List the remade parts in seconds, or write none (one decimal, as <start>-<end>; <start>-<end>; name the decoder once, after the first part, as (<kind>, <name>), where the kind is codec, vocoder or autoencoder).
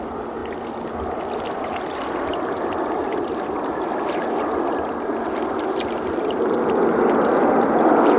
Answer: 0.0-0.4 (vocoder, BigVGAN v2); 1.8-8.2